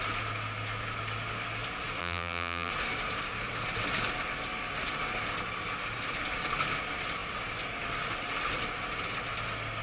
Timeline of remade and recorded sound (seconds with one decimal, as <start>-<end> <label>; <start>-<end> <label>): 0.0-2.0 recorded; 2.0-2.7 remade; 2.7-9.8 recorded